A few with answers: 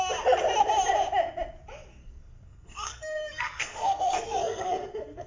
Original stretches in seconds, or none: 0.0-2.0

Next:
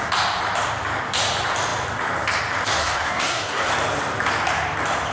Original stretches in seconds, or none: 0.0-2.8; 3.7-5.1

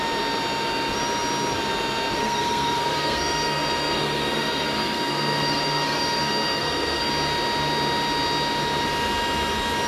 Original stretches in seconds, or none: 0.0-2.2; 7.1-9.9

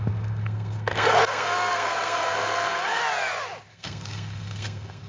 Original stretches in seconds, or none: 3.0-3.7

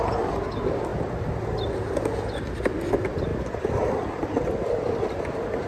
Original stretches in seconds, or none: 0.0-5.7

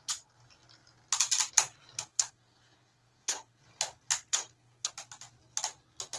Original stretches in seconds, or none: 0.0-2.1; 3.6-4.3; 4.9-6.2